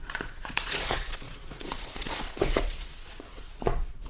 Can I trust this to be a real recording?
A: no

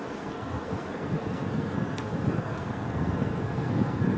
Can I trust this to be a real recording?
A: no